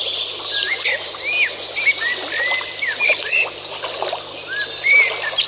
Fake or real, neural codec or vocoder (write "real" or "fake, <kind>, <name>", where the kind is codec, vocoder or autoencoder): real